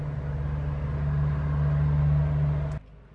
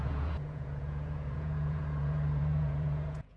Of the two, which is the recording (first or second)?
first